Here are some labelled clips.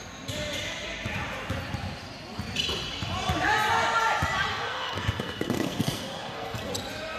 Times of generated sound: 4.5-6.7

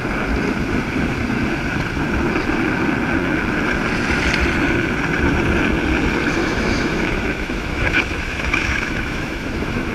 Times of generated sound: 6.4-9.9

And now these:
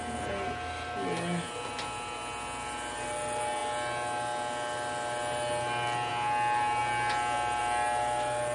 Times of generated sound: none